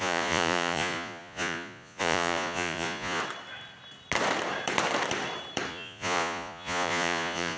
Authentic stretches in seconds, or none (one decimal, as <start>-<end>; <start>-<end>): 3.2-5.7